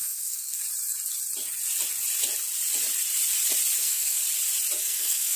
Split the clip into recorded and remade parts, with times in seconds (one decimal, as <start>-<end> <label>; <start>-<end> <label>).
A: 0.0-0.6 remade; 0.6-3.8 recorded; 3.8-4.2 remade; 4.2-4.8 recorded; 4.8-5.4 remade

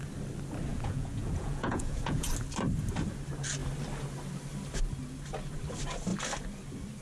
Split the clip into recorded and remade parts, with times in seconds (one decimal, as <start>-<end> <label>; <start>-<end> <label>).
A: 0.0-0.7 recorded; 0.7-2.3 remade; 2.3-7.0 recorded

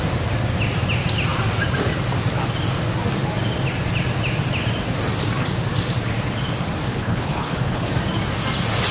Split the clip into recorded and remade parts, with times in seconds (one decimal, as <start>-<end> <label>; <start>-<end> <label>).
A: 0.0-6.9 recorded; 6.9-7.9 remade; 7.9-8.9 recorded

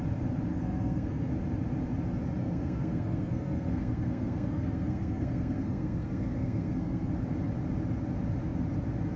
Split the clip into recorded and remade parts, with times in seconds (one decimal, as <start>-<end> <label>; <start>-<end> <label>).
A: 0.0-0.5 recorded; 0.5-1.3 remade; 1.3-2.4 recorded; 2.4-7.1 remade; 7.1-9.2 recorded

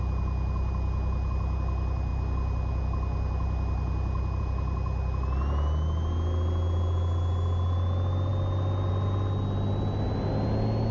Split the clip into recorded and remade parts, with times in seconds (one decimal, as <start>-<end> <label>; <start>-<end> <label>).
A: 0.0-10.9 recorded

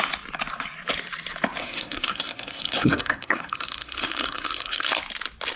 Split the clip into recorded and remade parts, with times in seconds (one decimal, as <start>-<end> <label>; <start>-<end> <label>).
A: 0.0-1.6 recorded; 1.6-5.0 remade; 5.0-5.6 recorded

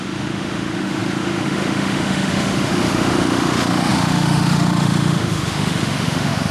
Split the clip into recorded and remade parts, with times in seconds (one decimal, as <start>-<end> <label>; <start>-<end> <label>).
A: 0.0-6.5 remade